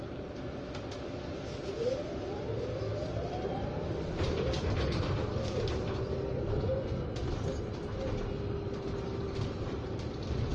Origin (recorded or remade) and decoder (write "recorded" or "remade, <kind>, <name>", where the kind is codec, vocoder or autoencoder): recorded